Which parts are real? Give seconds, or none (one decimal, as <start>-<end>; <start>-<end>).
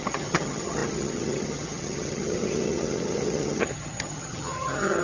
none